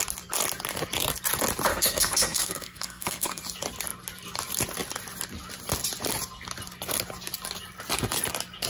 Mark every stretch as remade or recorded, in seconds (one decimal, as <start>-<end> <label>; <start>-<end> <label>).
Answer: 0.0-1.7 recorded; 1.7-3.4 remade; 3.4-8.7 recorded